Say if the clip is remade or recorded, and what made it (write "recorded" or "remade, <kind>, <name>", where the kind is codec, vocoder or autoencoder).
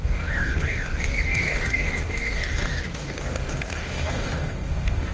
remade, codec, DAC